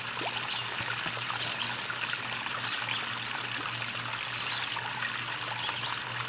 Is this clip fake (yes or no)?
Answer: no